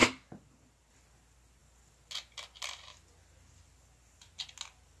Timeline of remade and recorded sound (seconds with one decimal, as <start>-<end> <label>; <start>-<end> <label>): 0.0-5.0 recorded